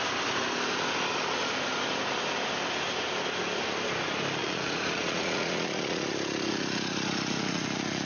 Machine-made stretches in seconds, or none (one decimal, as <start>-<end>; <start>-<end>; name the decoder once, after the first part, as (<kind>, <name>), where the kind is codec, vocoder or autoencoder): 4.4-8.1 (vocoder, Vocos)